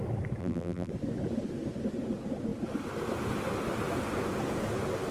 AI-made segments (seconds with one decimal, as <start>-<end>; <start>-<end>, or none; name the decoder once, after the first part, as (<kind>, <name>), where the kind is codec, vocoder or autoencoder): 0.4-0.9 (vocoder, BigVGAN v2)

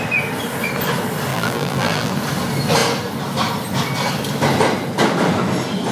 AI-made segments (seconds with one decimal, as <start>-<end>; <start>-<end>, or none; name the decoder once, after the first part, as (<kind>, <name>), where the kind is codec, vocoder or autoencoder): 1.3-2.1 (vocoder, BigVGAN v2)

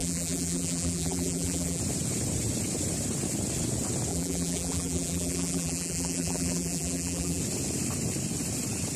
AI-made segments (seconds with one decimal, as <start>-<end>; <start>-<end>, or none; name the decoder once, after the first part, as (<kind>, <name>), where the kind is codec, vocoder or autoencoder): 0.0-1.8 (vocoder, BigVGAN v2); 4.1-7.4

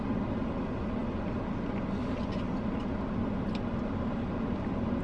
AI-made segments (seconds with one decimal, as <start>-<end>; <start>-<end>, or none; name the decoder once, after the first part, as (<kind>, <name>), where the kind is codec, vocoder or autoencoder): none

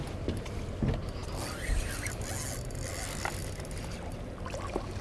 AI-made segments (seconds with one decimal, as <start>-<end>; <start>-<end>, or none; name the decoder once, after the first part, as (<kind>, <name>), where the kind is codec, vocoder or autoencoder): none

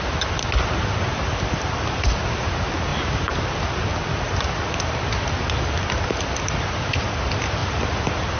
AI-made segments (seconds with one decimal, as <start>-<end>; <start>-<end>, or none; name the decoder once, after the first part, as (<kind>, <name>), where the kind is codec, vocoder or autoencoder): 2.9-3.5 (vocoder, BigVGAN v2)

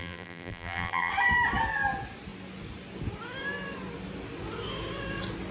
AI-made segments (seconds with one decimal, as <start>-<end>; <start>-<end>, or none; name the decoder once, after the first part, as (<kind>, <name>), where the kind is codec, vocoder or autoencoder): 0.0-1.1 (vocoder, BigVGAN v2)

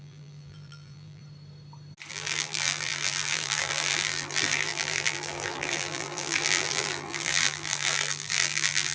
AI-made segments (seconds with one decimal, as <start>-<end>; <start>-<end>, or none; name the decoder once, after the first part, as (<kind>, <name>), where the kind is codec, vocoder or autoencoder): 0.0-1.2 (vocoder, BigVGAN v2); 2.1-8.9